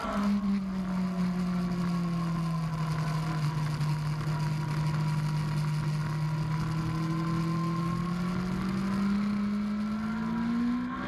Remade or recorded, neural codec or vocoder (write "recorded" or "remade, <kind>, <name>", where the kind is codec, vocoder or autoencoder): recorded